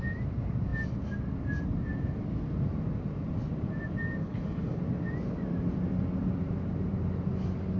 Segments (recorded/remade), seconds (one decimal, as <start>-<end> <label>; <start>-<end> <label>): 0.0-4.2 recorded; 4.2-4.8 remade; 4.8-7.8 recorded